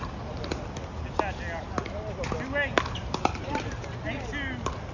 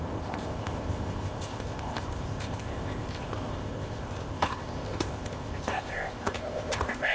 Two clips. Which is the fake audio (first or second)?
second